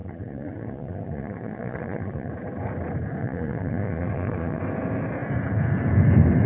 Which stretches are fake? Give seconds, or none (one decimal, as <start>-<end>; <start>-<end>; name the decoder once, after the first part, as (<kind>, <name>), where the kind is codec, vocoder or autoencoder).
0.0-2.3 (vocoder, Vocos); 3.2-4.6